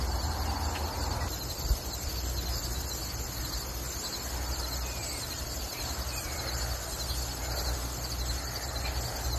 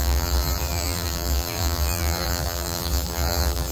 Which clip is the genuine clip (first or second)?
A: first